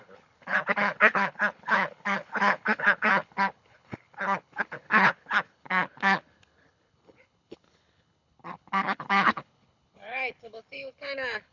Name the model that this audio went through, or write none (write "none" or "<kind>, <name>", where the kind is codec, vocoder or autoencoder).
codec, HILCodec